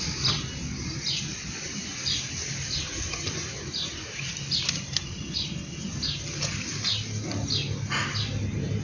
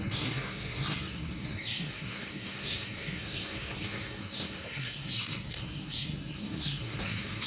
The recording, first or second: first